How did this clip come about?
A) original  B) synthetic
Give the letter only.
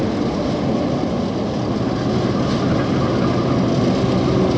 A